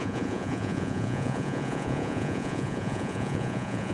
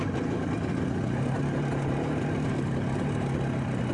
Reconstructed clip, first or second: first